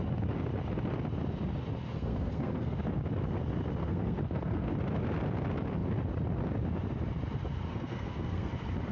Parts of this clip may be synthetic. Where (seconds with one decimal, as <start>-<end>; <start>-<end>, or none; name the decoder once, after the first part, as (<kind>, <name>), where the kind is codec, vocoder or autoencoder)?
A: 1.9-2.8 (codec, SNAC); 3.8-4.7; 7.7-8.5